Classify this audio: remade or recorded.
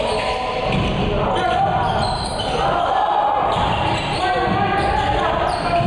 recorded